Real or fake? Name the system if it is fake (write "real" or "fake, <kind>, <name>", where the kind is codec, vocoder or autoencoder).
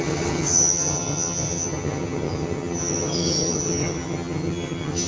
fake, vocoder, HiFi-GAN